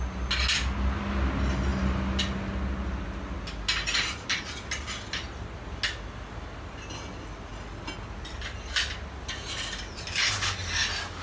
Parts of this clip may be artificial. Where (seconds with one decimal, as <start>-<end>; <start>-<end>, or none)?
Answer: none